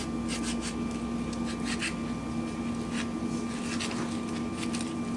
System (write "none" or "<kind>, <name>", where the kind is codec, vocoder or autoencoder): none